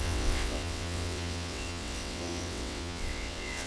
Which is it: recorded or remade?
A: remade